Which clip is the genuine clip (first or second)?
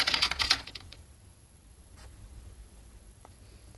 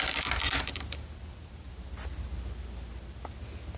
second